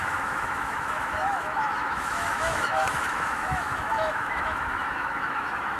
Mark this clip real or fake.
fake